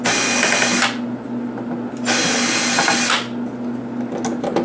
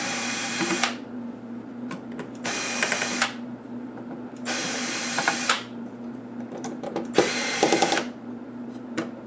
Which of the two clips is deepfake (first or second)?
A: second